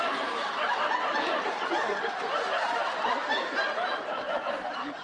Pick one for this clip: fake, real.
fake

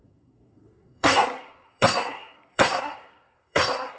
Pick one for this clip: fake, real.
fake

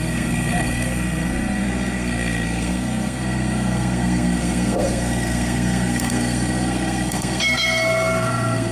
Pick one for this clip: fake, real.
fake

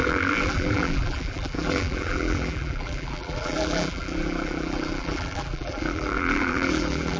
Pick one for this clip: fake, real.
fake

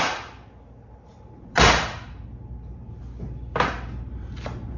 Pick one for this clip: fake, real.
real